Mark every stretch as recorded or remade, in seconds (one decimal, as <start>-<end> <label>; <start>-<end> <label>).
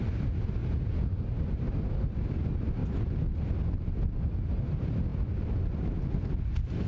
0.0-0.6 recorded; 0.6-1.2 remade; 1.2-6.9 recorded